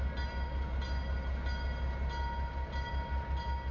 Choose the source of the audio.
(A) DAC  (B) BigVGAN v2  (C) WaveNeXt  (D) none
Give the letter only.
D